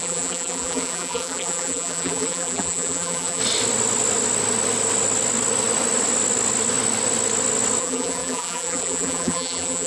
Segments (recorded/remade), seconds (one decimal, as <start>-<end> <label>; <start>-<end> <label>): 0.0-3.4 remade; 3.4-7.8 recorded; 7.8-9.9 remade